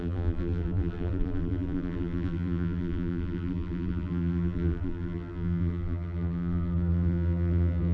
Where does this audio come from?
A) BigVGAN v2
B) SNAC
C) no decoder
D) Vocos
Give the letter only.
A